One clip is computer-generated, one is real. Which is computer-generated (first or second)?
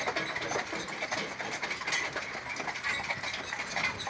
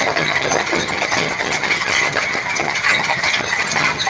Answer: second